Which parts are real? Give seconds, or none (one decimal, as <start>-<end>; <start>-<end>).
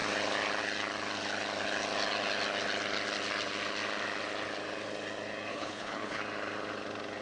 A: 0.0-5.5; 6.2-7.2